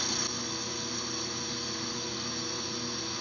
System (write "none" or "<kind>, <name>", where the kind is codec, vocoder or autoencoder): none